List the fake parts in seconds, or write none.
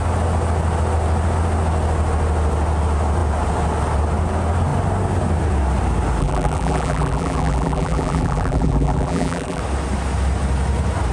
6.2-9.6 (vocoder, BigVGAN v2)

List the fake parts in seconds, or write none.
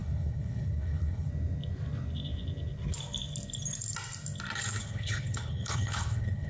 0.0-1.3 (codec, HILCodec); 4.8-6.5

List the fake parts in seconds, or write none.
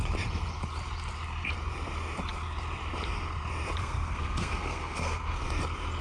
3.8-5.4 (codec, SNAC)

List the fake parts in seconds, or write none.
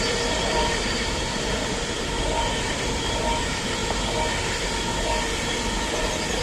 0.0-3.8 (vocoder, BigVGAN v2); 5.9-6.4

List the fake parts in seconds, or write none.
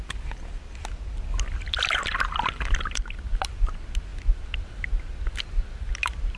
none